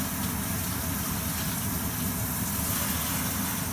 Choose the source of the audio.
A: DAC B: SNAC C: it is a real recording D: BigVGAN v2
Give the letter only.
C